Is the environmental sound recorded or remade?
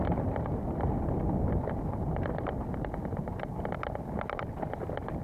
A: recorded